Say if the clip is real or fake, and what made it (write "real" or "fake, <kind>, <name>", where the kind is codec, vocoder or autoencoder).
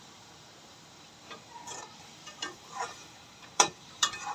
fake, vocoder, BigVGAN v2